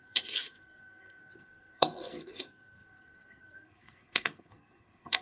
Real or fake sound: fake